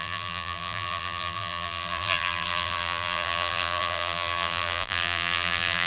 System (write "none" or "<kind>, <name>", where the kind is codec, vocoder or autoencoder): vocoder, BigVGAN v2